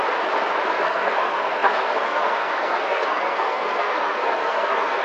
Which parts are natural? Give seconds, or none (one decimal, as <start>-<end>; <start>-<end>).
0.0-0.7